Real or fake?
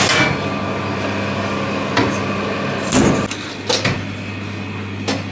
real